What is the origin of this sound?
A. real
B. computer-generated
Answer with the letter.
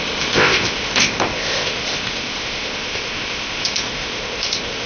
B